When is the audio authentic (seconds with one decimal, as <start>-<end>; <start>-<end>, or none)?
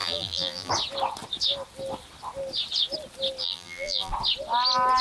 0.7-3.4; 4.1-5.0